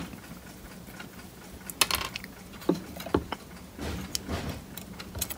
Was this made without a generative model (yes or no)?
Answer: yes